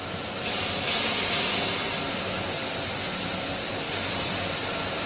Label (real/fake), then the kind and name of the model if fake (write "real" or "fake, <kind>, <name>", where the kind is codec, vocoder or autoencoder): real